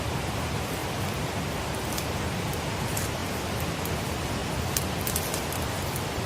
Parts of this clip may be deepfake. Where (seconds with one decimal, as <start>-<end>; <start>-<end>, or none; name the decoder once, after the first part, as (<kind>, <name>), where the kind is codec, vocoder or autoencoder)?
none